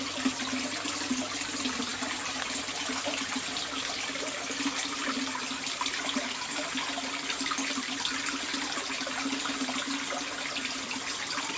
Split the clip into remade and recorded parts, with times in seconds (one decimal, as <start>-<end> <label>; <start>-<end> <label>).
0.0-11.6 recorded